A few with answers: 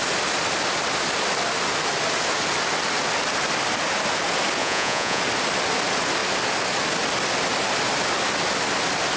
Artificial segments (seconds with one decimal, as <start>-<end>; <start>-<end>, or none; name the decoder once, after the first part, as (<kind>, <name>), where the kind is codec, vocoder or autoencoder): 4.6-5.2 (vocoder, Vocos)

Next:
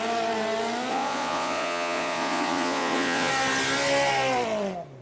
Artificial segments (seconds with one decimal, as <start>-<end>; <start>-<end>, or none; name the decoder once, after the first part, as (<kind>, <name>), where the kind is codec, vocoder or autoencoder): 0.9-3.3 (vocoder, Vocos)

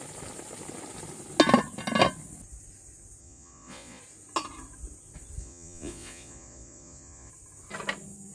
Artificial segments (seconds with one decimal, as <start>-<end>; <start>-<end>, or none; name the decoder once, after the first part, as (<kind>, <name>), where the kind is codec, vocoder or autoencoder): 3.2-4.0 (vocoder, Vocos); 5.4-7.3

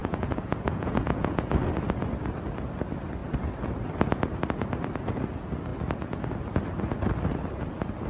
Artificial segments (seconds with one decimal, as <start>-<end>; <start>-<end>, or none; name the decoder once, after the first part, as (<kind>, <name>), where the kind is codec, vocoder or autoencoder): 0.0-1.5 (vocoder, Vocos)

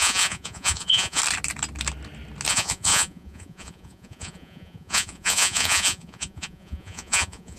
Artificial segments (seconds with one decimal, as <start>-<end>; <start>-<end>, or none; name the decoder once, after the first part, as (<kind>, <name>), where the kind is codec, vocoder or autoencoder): 0.0-1.2 (vocoder, Vocos); 2.5-7.6

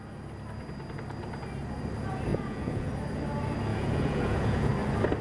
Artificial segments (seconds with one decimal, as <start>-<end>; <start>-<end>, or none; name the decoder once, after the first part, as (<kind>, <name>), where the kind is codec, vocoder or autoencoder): 2.3-2.9 (vocoder, Vocos); 3.7-4.7

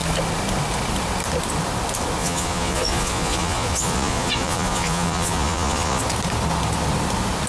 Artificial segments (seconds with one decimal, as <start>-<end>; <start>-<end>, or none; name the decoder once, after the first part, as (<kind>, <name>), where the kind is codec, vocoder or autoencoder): 2.2-6.0 (vocoder, Vocos)